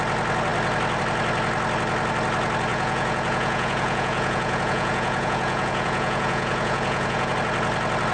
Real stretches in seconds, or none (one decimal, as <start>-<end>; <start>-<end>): 0.0-2.7; 7.3-8.1